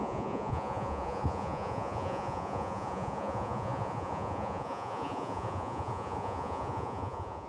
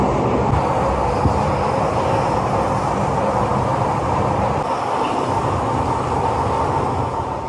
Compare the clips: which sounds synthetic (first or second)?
first